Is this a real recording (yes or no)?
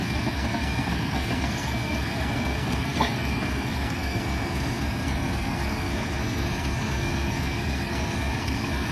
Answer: no